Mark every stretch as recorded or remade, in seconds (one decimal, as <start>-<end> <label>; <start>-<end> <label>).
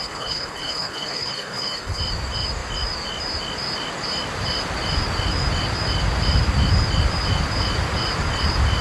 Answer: 0.0-2.0 remade; 2.0-8.8 recorded